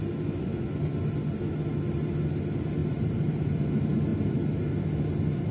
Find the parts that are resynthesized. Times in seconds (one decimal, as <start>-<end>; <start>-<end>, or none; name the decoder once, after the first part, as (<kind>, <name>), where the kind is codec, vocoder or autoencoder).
2.8-3.6 (vocoder, BigVGAN v2)